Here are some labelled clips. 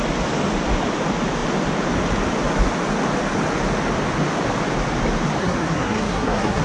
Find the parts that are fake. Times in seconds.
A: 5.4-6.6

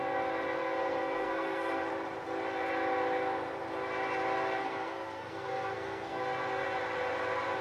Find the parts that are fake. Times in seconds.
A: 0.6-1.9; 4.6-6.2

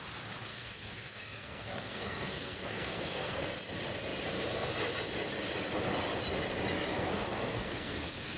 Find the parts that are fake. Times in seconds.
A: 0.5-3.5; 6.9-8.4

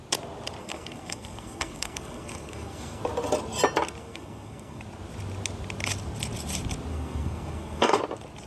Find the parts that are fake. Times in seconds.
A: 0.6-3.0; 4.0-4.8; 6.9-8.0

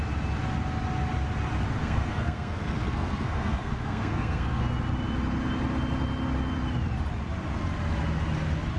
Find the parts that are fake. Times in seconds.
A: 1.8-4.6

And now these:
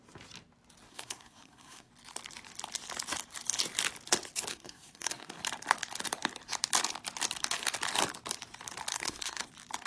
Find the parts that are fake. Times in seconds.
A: 0.9-1.9; 4.5-5.3; 8.9-9.5